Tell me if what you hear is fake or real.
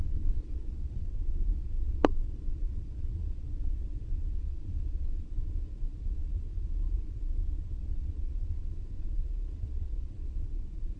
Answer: fake